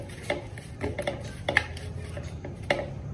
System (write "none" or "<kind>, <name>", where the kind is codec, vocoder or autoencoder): none